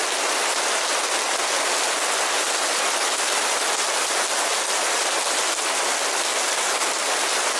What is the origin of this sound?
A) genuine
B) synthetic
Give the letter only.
A